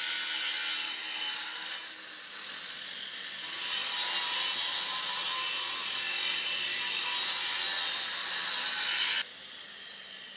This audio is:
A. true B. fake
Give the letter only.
A